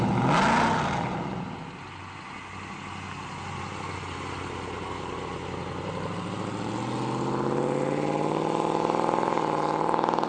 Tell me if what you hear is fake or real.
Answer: real